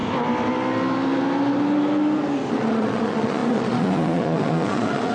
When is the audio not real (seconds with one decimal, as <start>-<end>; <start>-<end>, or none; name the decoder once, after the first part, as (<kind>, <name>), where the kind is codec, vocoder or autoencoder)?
2.5-5.1 (vocoder, Vocos)